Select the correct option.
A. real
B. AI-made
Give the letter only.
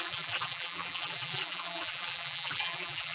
B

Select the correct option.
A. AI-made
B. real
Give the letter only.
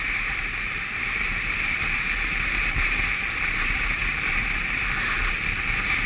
A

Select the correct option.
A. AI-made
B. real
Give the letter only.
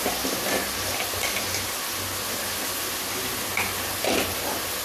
B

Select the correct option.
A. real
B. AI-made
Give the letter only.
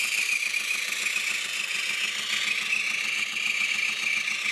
A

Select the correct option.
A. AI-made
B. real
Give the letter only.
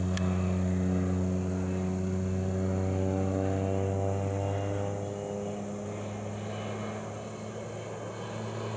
B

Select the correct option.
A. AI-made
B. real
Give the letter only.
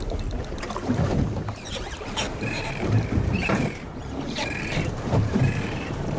A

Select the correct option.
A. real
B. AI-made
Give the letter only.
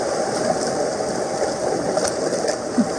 B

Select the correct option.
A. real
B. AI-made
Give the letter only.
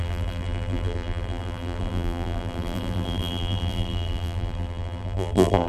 B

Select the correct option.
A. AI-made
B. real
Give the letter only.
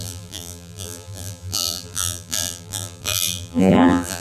A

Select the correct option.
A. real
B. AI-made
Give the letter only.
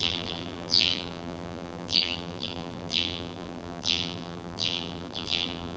B